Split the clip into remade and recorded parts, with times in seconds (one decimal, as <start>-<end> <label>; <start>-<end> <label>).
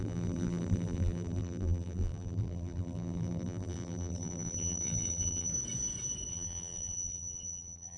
0.0-5.5 remade; 5.5-6.3 recorded; 6.3-8.0 remade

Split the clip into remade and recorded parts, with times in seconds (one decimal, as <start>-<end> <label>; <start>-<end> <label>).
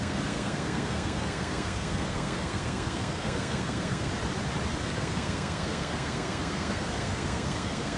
0.0-4.1 remade; 4.1-4.8 recorded; 4.8-8.0 remade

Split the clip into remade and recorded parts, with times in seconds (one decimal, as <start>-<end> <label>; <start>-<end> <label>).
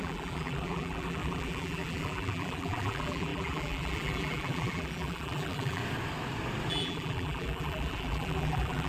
0.0-5.8 remade; 5.8-6.7 recorded; 6.7-8.9 remade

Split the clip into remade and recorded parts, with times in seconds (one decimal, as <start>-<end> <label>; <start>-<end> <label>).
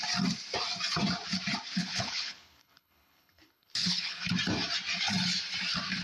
0.0-1.8 recorded; 1.8-4.2 remade; 4.2-6.0 recorded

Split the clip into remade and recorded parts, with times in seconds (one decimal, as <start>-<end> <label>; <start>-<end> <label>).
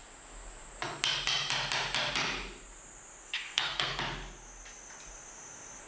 0.0-3.2 recorded; 3.2-3.9 remade; 3.9-5.9 recorded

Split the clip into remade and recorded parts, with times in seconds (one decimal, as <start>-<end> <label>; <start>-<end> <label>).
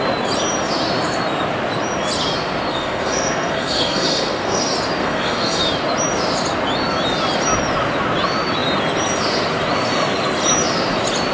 0.0-2.7 recorded; 2.7-4.6 remade; 4.6-5.0 recorded; 5.0-5.6 remade; 5.6-11.3 recorded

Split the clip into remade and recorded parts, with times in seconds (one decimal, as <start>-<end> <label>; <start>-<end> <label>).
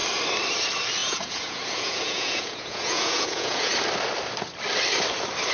0.0-1.0 recorded; 1.0-3.7 remade; 3.7-5.5 recorded